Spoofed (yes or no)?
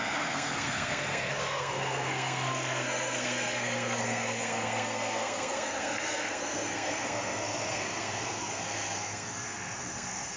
yes